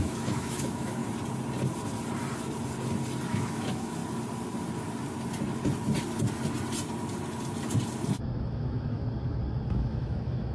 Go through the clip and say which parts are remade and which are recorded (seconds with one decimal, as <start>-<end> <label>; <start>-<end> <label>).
0.0-1.0 remade; 1.0-3.3 recorded; 3.3-4.0 remade; 4.0-8.4 recorded; 8.4-9.0 remade; 9.0-9.7 recorded; 9.7-10.5 remade